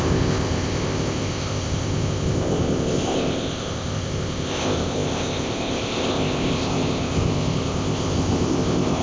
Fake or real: fake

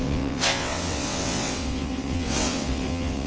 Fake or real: fake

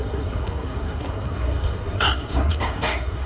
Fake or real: fake